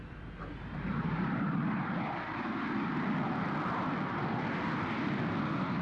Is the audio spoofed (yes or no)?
yes